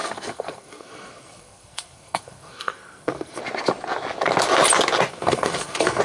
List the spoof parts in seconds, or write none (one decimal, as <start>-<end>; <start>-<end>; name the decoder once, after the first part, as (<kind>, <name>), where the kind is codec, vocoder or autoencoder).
0.0-3.4 (codec, SNAC); 5.1-6.0